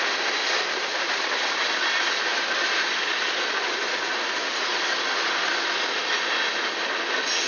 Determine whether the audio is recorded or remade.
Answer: recorded